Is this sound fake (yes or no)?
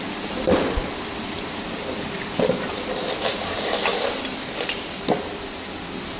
no